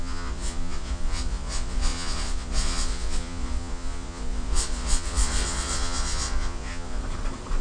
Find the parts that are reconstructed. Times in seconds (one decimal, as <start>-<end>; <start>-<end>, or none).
0.0-7.0